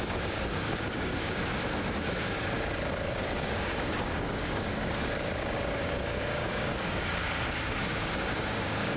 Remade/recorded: remade